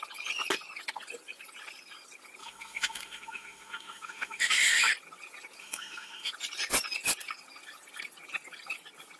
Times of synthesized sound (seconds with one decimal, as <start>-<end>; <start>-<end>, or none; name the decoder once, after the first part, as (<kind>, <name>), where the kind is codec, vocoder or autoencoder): 2.4-4.9 (autoencoder, DAC-VAE); 5.6-6.3